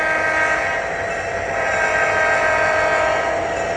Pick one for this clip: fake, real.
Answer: real